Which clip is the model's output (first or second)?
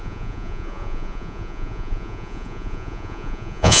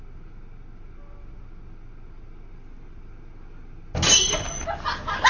first